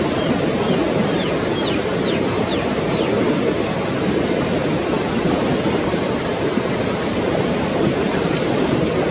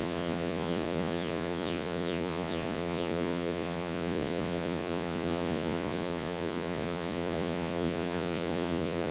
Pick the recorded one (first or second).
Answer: first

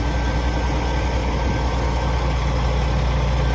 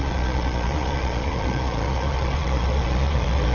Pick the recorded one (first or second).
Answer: first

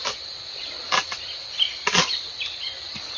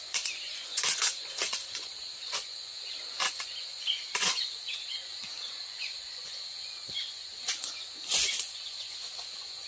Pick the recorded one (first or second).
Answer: first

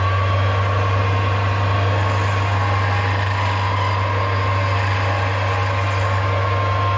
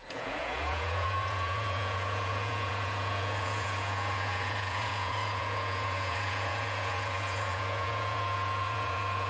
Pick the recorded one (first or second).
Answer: first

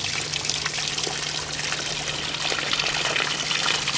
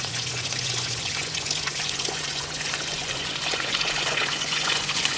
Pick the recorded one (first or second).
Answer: first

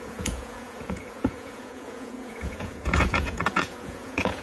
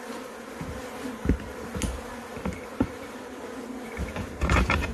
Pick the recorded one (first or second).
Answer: second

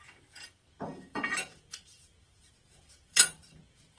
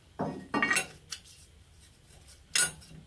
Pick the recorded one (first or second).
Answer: second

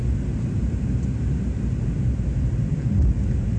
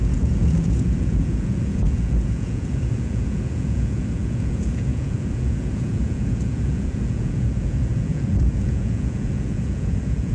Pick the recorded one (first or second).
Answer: first